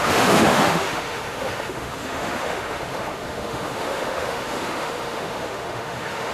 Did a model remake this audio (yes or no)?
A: yes